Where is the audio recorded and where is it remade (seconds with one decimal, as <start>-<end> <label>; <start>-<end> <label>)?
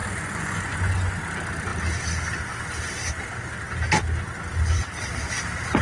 0.0-1.2 remade; 1.2-5.8 recorded